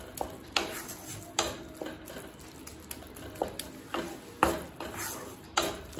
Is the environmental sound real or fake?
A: real